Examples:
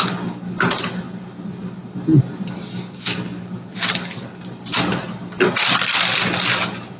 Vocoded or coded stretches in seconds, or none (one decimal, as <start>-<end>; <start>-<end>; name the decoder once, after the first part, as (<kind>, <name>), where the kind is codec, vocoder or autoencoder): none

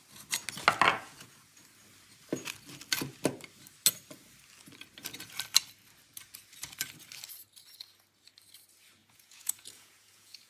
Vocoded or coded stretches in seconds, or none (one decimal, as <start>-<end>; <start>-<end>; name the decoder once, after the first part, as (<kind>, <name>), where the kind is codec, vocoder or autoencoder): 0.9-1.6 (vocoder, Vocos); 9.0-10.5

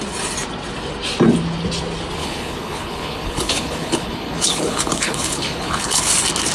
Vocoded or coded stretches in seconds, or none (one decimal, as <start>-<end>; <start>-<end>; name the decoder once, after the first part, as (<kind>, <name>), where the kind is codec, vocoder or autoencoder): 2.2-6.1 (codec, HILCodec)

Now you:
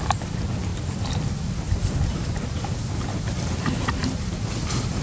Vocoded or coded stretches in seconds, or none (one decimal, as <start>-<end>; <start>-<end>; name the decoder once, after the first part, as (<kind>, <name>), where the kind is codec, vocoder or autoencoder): none

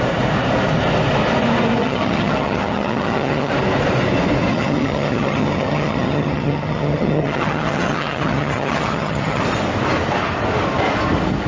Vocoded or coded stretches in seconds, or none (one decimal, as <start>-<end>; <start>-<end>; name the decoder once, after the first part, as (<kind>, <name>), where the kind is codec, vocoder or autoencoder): 1.8-3.5 (vocoder, HiFi-GAN); 4.5-9.4